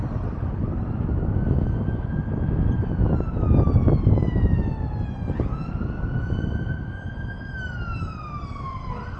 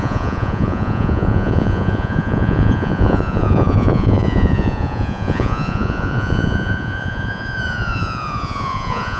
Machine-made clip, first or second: second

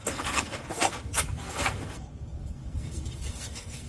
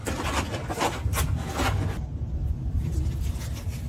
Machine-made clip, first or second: first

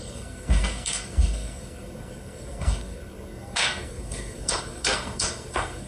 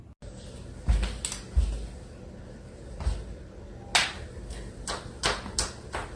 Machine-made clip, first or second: first